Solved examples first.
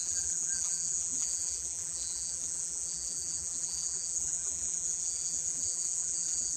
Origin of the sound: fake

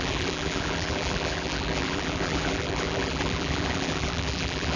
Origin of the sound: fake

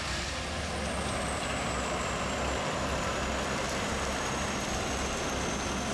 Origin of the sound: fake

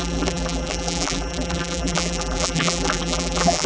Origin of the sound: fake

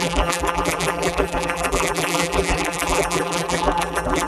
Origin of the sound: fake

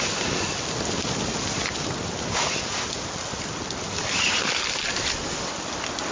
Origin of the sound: real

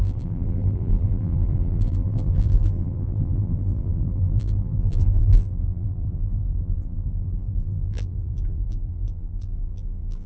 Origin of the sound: fake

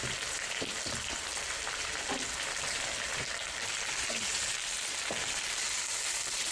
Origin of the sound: real